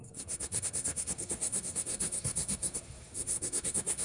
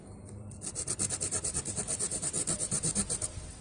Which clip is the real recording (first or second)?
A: second